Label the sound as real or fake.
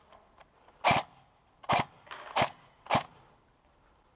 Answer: real